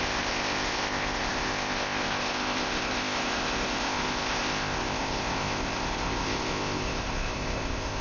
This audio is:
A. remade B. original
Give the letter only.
A